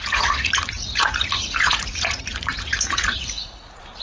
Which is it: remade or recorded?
remade